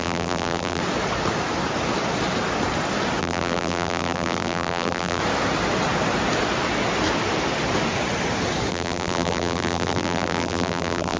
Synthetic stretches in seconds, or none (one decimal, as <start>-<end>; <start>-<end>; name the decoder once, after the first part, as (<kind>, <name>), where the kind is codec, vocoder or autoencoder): 0.0-0.8 (vocoder, BigVGAN v2); 3.2-5.2; 8.7-11.2